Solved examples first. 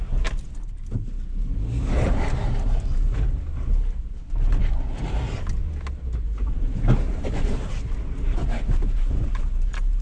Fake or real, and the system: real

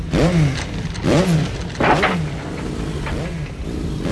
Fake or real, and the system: real